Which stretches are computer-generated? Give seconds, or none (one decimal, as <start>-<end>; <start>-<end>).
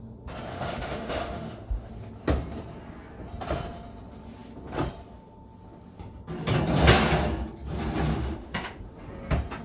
0.5-1.9; 8.1-8.8